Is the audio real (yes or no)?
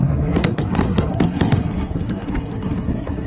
no